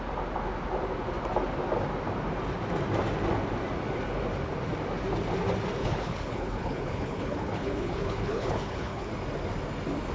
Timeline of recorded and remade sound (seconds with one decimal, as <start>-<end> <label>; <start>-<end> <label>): 0.0-5.8 recorded; 5.8-9.1 remade; 9.1-10.1 recorded